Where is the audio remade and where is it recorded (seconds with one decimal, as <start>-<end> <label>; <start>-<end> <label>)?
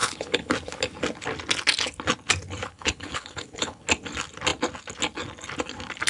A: 0.0-0.5 remade; 0.5-2.6 recorded; 2.6-3.8 remade; 3.8-6.1 recorded